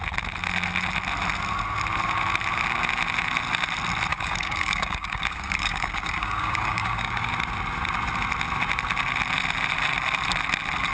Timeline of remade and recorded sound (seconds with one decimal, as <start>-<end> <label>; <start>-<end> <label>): 0.0-4.1 recorded; 4.1-7.3 remade; 7.3-10.9 recorded